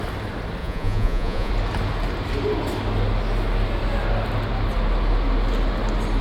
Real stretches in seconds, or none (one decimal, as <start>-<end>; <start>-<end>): 0.0-0.6; 1.5-6.2